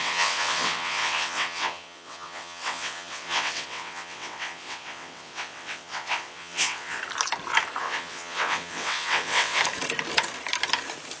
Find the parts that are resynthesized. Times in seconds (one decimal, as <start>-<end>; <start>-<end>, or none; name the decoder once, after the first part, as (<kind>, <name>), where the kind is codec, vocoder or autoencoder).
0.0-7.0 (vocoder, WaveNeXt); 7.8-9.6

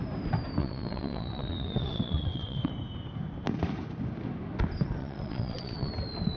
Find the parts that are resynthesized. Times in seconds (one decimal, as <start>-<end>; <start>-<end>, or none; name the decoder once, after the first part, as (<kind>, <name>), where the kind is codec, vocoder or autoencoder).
0.6-2.7 (vocoder, WaveNeXt); 5.0-5.9

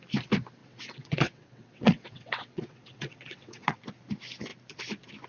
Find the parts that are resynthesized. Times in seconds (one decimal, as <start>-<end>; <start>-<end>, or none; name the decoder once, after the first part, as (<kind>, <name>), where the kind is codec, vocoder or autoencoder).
0.6-3.8 (vocoder, WaveNeXt)

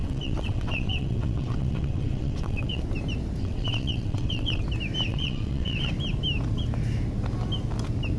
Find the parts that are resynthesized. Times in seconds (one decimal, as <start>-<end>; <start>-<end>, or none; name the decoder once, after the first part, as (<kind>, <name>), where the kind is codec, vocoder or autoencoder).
0.0-2.8 (vocoder, WaveNeXt); 3.4-4.6; 5.1-5.9

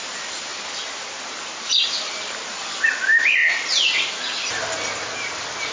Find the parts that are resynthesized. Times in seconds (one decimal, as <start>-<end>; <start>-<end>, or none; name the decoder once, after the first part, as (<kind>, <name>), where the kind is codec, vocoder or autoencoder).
none

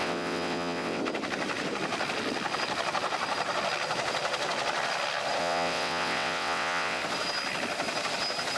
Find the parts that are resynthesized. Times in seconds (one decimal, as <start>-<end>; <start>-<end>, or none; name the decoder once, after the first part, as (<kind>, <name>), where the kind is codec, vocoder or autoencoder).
0.0-1.0 (vocoder, WaveNeXt); 5.4-7.0